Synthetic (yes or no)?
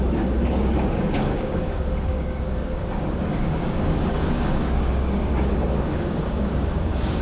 yes